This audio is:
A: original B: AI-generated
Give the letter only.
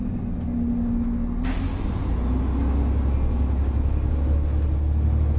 A